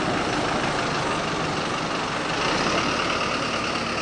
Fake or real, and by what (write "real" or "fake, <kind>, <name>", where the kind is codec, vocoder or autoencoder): real